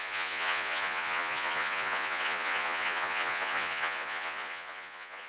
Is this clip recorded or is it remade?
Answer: remade